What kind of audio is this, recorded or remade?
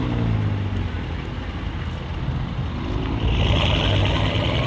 recorded